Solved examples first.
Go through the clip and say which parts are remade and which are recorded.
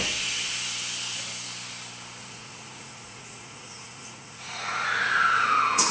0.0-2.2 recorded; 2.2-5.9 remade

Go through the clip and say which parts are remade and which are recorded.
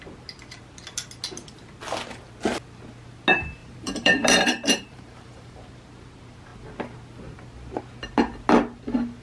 0.0-3.6 recorded; 3.6-5.6 remade; 5.6-9.2 recorded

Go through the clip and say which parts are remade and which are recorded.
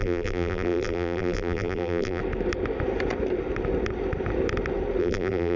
0.0-2.2 remade; 2.2-5.0 recorded; 5.0-5.6 remade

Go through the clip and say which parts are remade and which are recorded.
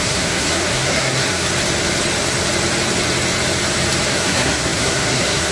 0.0-1.5 remade; 1.5-4.1 recorded; 4.1-5.5 remade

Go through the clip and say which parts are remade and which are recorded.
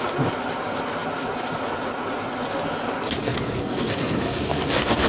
0.0-3.2 recorded; 3.2-5.1 remade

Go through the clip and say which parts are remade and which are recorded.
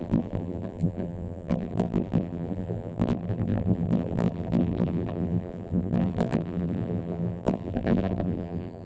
0.0-8.9 remade